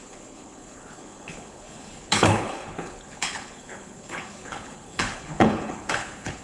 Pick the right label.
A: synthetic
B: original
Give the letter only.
A